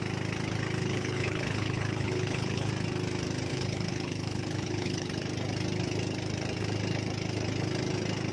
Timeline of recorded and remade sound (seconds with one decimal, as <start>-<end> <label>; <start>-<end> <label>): 0.0-0.8 recorded; 0.8-2.7 remade; 2.7-3.5 recorded; 3.5-5.1 remade; 5.1-8.3 recorded